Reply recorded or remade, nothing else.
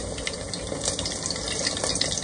recorded